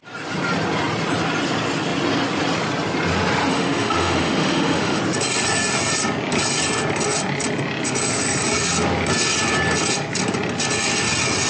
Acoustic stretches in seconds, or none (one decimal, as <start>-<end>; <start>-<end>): 0.0-3.5; 5.0-11.5